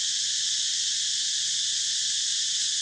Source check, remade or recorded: recorded